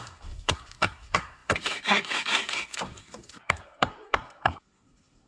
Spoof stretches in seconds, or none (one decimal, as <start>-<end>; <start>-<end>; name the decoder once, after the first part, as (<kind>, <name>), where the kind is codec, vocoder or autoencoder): 0.0-5.3 (codec, SNAC)